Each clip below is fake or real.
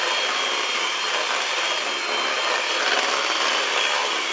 real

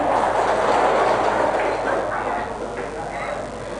real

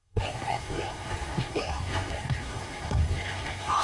fake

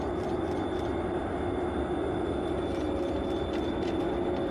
real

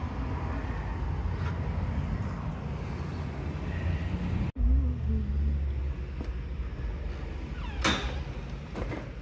real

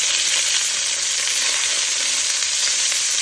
real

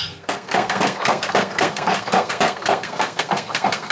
fake